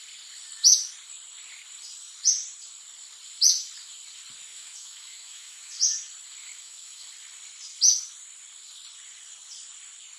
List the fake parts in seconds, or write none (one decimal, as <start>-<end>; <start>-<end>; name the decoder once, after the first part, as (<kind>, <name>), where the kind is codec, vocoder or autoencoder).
4.5-5.7 (autoencoder, DAC-VAE); 6.4-7.1